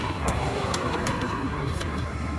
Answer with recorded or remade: remade